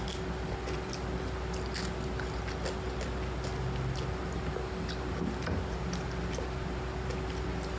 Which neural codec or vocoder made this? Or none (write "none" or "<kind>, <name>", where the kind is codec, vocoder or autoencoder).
none